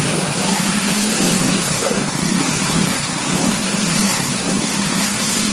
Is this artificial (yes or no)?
yes